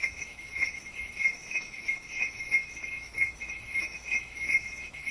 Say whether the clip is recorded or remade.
remade